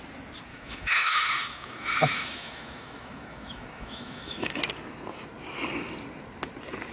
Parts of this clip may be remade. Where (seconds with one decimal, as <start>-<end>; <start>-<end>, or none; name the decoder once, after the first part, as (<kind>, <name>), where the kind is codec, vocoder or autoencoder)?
0.5-4.6 (autoencoder, DAC-VAE)